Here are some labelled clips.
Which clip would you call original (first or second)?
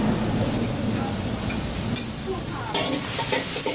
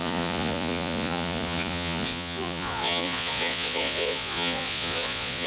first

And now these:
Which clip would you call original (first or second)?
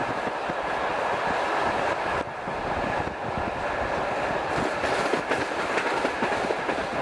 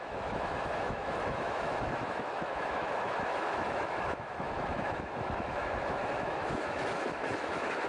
first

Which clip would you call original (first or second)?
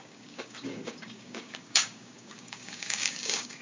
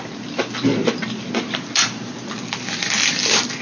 second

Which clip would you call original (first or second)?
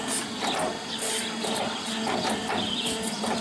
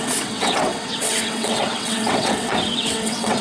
first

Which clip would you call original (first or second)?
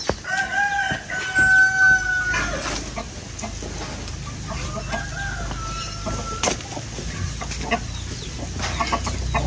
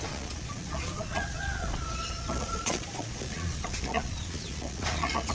first